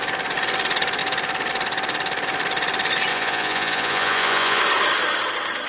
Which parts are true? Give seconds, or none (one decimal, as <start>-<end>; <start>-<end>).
0.0-3.1; 4.6-5.7